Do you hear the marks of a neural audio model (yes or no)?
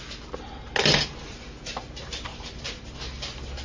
no